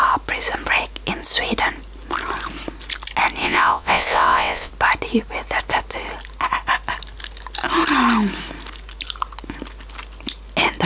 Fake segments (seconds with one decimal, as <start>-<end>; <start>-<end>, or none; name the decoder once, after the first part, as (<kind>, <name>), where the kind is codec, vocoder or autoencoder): 3.4-4.7 (vocoder, WaveNeXt)